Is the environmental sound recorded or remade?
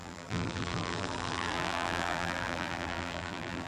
remade